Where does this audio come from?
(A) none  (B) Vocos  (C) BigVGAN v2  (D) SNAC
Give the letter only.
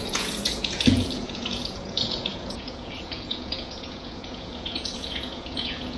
B